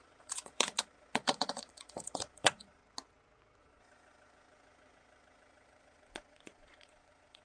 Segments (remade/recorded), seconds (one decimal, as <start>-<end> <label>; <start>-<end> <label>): 0.0-2.8 remade; 2.8-3.6 recorded; 3.6-7.4 remade